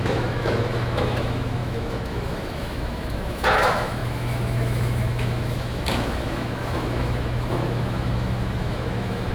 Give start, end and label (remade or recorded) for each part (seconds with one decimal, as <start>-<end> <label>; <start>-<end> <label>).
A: 0.0-9.3 remade